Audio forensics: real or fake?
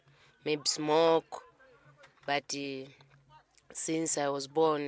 real